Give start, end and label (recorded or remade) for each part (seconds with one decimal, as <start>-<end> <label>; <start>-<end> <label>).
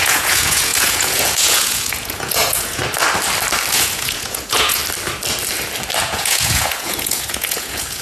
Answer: 0.0-2.8 remade; 2.8-3.7 recorded; 3.7-4.8 remade; 4.8-6.0 recorded; 6.0-8.0 remade